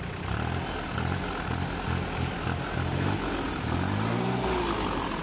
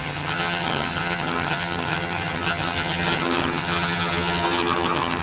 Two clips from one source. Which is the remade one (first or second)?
second